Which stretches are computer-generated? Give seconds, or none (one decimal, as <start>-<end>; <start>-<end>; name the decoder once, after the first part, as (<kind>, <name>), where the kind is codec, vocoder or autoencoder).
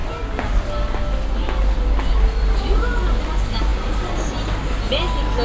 none